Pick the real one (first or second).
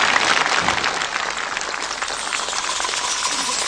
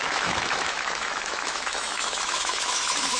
first